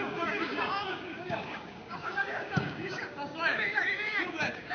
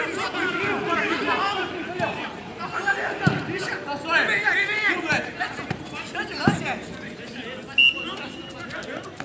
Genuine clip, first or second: second